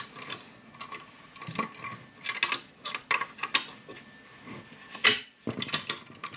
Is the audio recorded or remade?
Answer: recorded